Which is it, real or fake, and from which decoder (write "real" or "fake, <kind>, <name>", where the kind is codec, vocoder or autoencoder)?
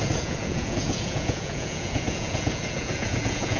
fake, vocoder, Vocos